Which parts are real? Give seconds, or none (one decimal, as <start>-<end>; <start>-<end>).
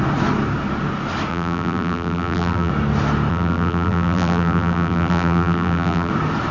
0.0-1.3; 2.7-3.3; 6.1-6.5